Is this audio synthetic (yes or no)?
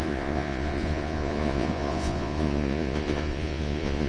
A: yes